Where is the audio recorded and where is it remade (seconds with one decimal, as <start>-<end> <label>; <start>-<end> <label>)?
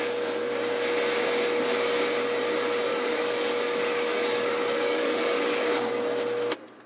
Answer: 0.0-2.9 recorded; 2.9-5.9 remade; 5.9-6.9 recorded